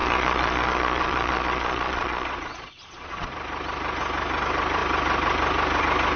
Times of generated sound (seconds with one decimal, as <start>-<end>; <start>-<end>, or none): 0.0-3.3